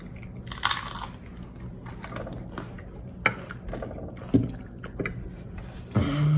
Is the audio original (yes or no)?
yes